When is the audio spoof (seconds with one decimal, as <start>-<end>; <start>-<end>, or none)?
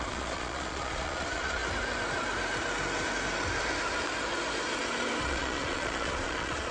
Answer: 0.0-1.6; 5.2-6.7